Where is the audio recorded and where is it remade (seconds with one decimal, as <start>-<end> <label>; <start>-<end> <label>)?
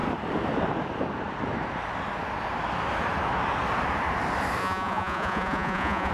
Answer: 0.0-4.6 recorded; 4.6-6.1 remade